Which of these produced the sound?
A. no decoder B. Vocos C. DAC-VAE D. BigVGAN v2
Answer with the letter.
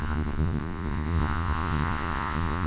B